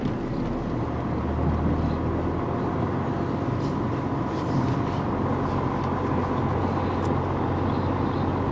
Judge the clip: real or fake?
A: real